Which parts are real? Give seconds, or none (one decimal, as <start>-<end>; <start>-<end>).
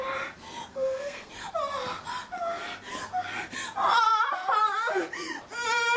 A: 0.0-0.7; 1.3-6.0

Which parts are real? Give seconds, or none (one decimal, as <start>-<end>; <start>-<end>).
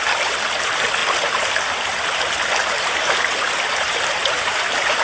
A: 0.0-2.6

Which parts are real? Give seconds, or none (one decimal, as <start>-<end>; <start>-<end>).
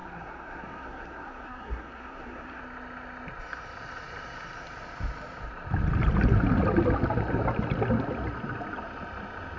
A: 2.6-9.6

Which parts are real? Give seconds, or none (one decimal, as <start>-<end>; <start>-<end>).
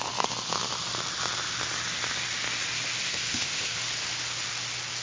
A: 0.0-3.0; 3.8-5.0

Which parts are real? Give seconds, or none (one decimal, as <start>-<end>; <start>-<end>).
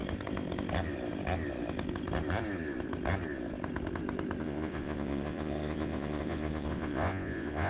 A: 0.0-4.4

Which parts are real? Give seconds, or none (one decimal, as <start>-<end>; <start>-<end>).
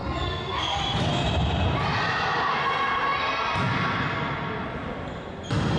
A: 0.8-5.8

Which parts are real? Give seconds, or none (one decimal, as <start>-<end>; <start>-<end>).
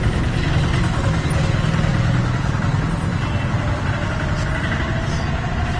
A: 0.0-3.1; 3.9-5.8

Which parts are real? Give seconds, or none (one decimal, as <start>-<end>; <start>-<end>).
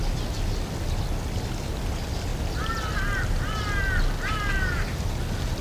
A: 0.0-5.6